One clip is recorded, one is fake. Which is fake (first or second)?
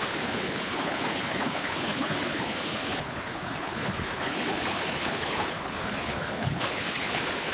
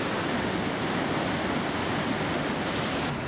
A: first